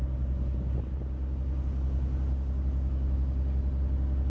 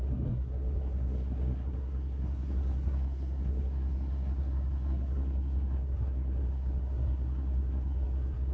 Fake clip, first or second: second